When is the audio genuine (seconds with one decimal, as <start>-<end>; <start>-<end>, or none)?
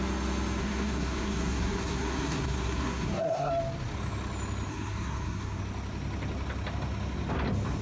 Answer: 0.0-0.6; 3.5-4.7; 5.6-7.8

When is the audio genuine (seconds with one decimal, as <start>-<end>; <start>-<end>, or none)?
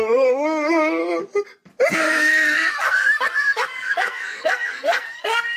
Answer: 1.0-1.9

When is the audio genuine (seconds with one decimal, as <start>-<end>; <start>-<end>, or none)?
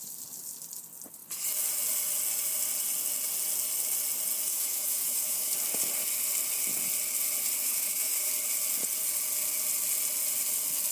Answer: 0.0-4.4; 5.5-7.6; 8.3-10.9